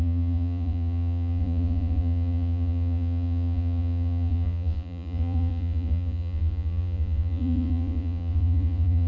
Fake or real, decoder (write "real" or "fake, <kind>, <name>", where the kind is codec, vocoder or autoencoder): fake, vocoder, Vocos